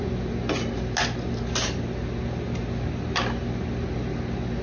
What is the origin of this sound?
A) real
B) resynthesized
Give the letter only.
A